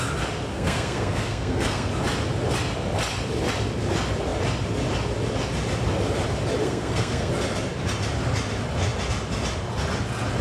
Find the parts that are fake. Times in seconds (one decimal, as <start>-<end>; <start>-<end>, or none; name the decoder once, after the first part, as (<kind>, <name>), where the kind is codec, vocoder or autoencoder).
0.5-1.9 (codec, SNAC); 6.6-7.3